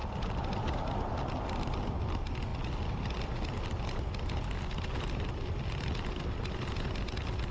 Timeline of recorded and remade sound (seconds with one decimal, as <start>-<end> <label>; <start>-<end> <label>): 0.0-7.5 recorded